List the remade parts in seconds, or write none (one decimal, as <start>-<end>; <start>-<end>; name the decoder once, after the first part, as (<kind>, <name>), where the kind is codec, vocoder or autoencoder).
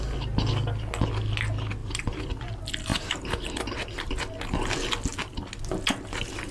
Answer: 1.8-2.4 (vocoder, BigVGAN v2); 2.9-4.1